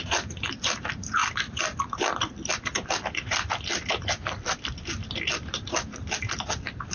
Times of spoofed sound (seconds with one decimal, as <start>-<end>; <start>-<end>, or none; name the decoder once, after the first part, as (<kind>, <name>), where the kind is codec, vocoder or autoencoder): none